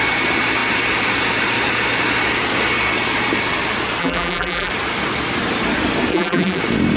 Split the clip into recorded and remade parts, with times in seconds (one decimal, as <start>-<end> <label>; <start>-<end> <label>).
0.0-4.0 recorded; 4.0-4.7 remade; 4.7-6.1 recorded; 6.1-6.6 remade; 6.6-7.0 recorded